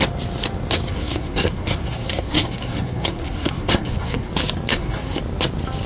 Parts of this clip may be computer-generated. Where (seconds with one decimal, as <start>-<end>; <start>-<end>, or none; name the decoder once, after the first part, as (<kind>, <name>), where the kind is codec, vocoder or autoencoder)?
0.9-4.3 (codec, SNAC); 4.7-5.2